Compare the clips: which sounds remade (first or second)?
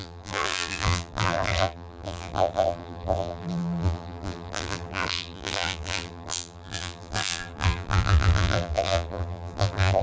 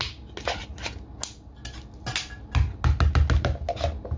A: first